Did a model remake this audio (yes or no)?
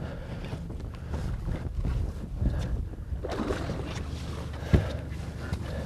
no